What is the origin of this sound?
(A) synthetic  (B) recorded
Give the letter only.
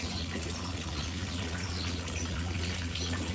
A